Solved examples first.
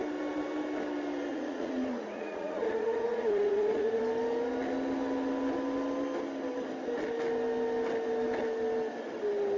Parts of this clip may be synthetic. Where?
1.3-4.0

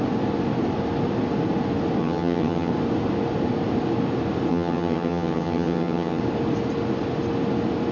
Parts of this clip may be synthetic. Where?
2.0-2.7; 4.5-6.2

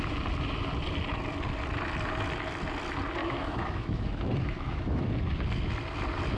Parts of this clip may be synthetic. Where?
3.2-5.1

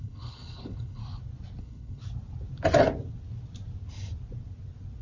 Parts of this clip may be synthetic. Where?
0.0-1.0; 1.6-2.0